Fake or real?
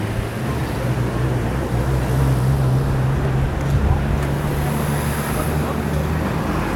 real